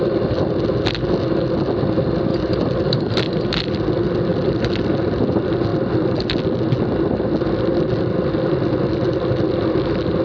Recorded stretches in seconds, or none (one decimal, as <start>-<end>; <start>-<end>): 0.0-2.3; 3.3-10.2